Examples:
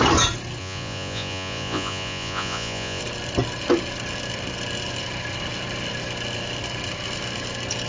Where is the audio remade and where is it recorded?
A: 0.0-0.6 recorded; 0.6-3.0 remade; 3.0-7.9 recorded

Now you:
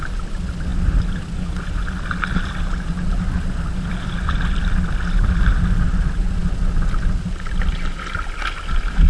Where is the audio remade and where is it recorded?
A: 0.0-9.1 recorded